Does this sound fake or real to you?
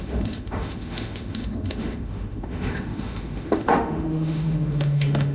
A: fake